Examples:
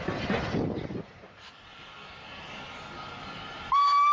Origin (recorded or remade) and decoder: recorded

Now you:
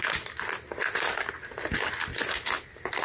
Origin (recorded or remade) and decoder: recorded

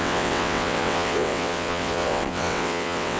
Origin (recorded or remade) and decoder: remade, vocoder, WaveNeXt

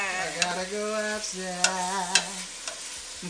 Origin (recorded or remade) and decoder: recorded